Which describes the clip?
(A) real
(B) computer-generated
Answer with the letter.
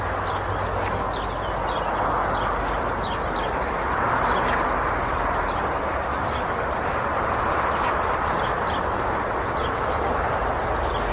A